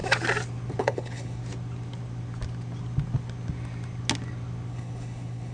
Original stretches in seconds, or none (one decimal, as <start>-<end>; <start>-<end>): 0.0-0.8; 1.4-4.7

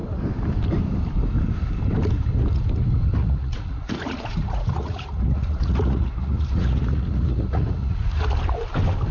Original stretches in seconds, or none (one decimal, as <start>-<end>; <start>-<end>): 0.0-3.2; 8.3-9.1

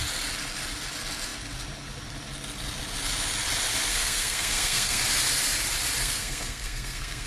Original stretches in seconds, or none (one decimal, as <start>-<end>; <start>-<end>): 0.0-3.9; 5.0-6.0

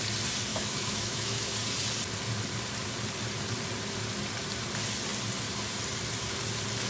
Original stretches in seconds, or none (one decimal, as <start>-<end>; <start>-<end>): 0.0-0.5; 1.5-6.9

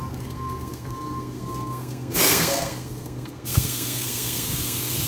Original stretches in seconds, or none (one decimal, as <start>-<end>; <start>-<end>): none

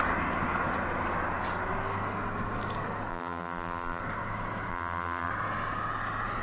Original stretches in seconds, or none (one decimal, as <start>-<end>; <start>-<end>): 0.0-3.1; 4.0-4.7; 5.3-6.4

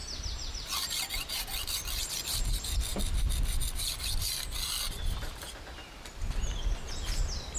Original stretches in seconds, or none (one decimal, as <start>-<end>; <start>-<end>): 0.0-7.6